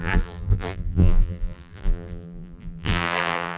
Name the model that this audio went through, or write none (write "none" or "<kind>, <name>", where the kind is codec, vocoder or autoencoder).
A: vocoder, BigVGAN v2